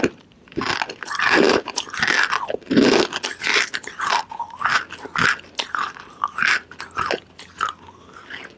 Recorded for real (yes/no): yes